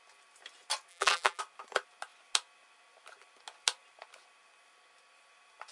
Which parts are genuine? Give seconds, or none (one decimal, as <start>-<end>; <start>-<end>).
0.0-0.9; 1.4-5.7